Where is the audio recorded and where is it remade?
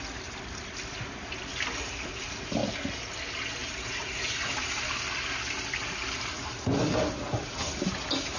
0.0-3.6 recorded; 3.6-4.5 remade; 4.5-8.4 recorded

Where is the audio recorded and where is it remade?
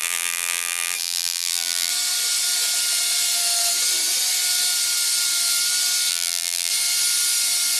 0.0-1.9 remade; 1.9-6.1 recorded; 6.1-6.7 remade; 6.7-7.8 recorded